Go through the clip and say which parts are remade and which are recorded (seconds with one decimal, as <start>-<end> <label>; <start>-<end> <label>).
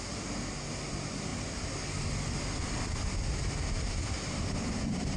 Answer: 0.0-5.2 recorded